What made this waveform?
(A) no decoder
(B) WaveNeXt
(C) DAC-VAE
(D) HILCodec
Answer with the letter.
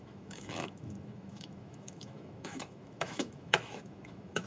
C